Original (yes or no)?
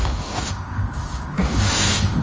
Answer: no